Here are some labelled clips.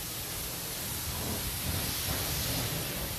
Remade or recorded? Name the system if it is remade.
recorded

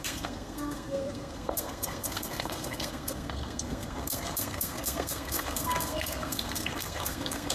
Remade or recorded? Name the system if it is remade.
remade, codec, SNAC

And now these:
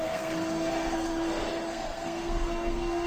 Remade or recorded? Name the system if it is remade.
remade, codec, SNAC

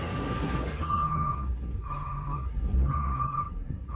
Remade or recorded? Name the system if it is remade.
remade, codec, SNAC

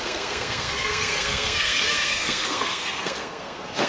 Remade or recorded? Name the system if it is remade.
remade, codec, SNAC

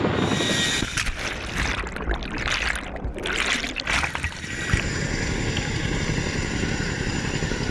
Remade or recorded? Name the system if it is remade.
recorded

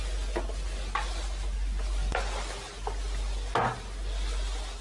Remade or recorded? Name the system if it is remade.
recorded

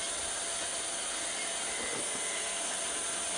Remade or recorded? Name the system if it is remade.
recorded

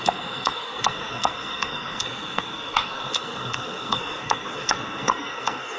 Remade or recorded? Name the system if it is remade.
remade, codec, SNAC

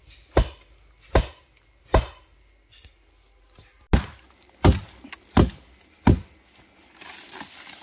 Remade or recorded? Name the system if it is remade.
recorded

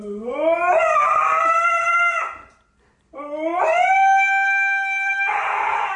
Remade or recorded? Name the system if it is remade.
recorded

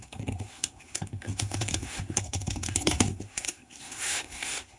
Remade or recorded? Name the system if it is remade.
remade, codec, SNAC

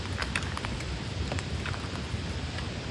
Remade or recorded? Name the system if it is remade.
recorded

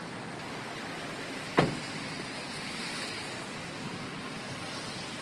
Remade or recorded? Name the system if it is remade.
recorded